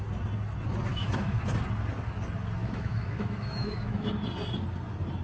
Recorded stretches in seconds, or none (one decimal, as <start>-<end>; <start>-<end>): 0.0-0.9; 1.4-2.6; 4.1-5.2